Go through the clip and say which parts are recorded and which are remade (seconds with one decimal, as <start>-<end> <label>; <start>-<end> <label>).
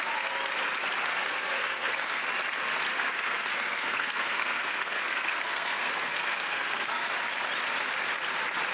0.0-1.1 recorded; 1.1-2.2 remade; 2.2-2.9 recorded; 2.9-7.1 remade; 7.1-8.7 recorded